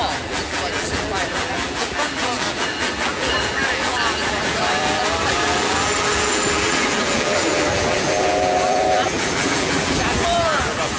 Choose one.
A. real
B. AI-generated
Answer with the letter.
B